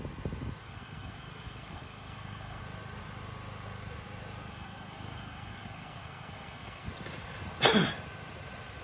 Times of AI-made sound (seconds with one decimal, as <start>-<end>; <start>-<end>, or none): 0.6-2.6; 4.5-6.9